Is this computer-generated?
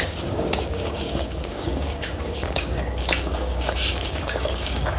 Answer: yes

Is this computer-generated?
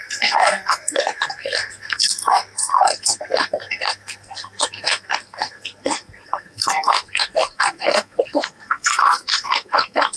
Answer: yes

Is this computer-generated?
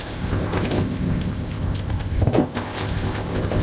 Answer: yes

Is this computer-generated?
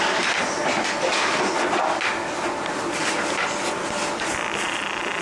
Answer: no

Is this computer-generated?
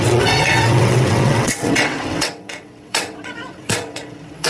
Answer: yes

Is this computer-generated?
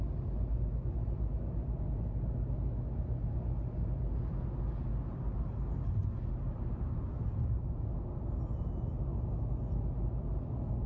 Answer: no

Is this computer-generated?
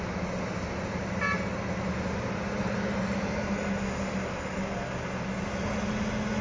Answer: no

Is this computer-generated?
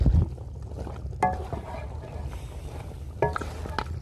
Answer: no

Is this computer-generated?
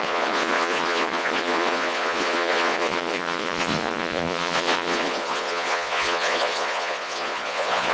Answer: yes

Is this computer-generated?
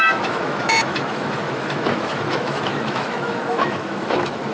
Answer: yes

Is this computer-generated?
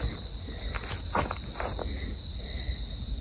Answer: no